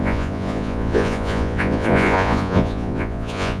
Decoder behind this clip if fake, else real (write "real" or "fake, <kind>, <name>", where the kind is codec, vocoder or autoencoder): fake, vocoder, Vocos